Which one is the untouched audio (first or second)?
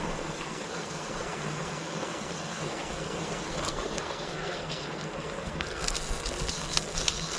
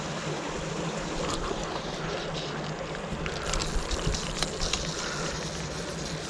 second